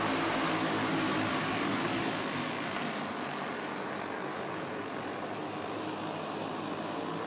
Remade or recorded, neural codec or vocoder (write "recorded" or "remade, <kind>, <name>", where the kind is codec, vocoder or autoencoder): recorded